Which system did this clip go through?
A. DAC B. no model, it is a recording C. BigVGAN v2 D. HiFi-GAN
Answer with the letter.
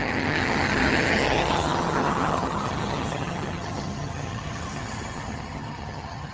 D